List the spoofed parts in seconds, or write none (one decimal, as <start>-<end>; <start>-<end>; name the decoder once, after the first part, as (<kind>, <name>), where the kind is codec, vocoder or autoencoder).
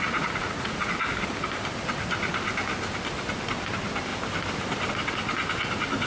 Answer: 0.0-0.9 (vocoder, Vocos)